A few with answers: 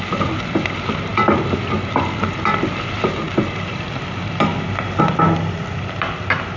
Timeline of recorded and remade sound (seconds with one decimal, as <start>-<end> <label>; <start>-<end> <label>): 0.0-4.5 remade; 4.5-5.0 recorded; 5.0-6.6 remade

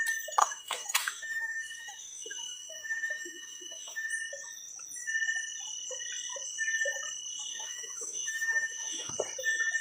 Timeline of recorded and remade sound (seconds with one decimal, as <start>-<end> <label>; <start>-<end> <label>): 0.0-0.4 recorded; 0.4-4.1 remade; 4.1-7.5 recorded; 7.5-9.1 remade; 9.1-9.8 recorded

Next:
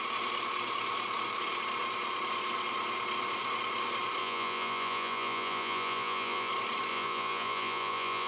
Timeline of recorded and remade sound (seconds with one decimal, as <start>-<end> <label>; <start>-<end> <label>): 0.0-4.2 recorded; 4.2-6.5 remade; 6.5-6.9 recorded; 6.9-8.3 remade